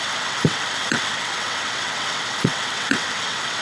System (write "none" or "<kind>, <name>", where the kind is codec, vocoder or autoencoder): vocoder, WaveNeXt